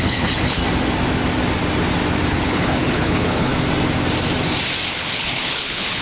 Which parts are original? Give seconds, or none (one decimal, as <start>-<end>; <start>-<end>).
0.6-2.3; 3.5-4.9